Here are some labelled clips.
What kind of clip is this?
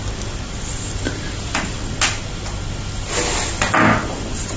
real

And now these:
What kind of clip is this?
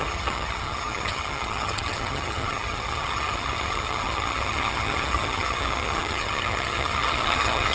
fake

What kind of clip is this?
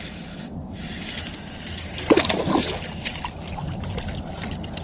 real